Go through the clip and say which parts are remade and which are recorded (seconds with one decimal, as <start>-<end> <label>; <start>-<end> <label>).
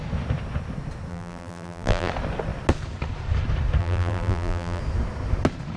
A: 0.0-1.1 recorded; 1.1-2.1 remade; 2.1-3.8 recorded; 3.8-4.8 remade; 4.8-5.8 recorded